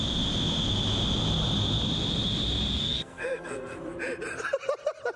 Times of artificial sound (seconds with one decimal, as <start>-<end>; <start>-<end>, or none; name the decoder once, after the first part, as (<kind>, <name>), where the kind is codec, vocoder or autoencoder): 2.8-3.8 (codec, SNAC)